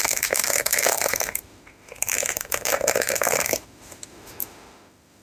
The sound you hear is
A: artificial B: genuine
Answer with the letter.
A